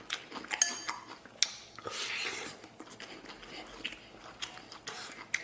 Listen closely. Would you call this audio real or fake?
real